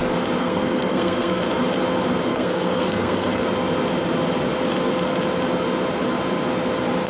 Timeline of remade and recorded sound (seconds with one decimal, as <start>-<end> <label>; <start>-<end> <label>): 0.0-0.4 recorded; 0.4-1.4 remade; 1.4-2.3 recorded; 2.3-3.4 remade; 3.4-7.1 recorded